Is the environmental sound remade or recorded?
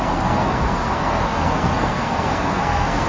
remade